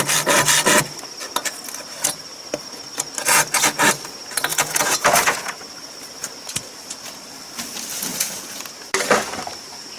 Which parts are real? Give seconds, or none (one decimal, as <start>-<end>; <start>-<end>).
0.0-4.5; 5.5-8.1; 8.6-10.0